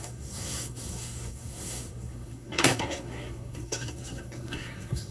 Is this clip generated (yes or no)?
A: yes